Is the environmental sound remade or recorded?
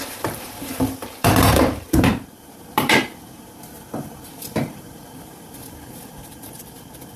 remade